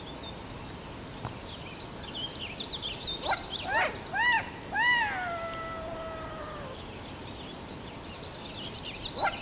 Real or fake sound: real